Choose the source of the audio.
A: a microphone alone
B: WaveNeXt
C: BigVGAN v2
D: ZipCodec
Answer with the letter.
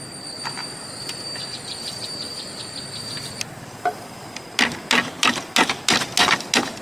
A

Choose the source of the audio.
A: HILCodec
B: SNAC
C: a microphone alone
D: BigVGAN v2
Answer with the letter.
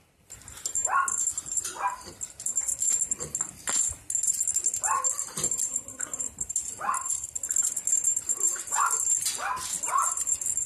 C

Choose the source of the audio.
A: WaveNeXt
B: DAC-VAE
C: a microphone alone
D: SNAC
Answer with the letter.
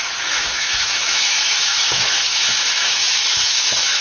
B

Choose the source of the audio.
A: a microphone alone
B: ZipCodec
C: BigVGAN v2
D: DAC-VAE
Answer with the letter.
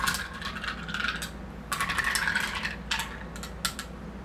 A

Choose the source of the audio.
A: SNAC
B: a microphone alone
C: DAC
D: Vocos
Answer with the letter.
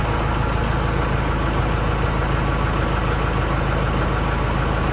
B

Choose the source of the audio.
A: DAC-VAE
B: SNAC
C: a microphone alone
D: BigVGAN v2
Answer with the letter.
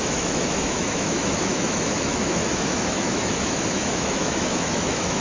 A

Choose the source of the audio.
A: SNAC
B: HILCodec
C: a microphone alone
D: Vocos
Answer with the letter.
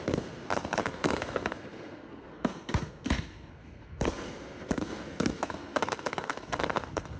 A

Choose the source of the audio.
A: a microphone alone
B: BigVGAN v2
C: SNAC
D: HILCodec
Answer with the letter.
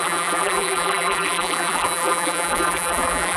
B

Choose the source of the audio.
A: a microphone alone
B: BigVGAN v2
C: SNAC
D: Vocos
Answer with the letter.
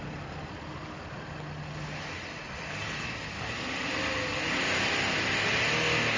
A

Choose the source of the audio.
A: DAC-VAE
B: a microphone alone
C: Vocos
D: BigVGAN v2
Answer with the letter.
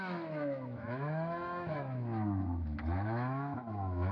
A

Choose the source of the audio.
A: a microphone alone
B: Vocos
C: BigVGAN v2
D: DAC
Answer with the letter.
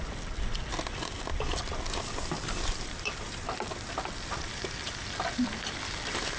C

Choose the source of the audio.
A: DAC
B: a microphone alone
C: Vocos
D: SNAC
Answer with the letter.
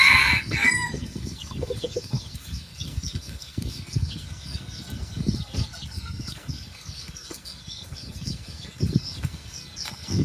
D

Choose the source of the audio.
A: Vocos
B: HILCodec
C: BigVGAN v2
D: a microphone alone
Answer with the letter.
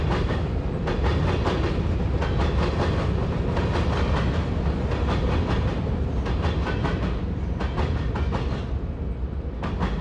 D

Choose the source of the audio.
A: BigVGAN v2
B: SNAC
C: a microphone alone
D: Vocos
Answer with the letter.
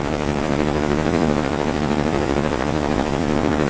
D